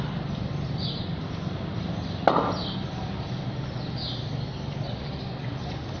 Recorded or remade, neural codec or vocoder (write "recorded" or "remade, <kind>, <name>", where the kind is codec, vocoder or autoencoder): recorded